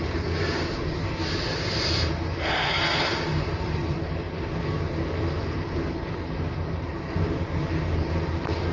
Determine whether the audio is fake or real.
fake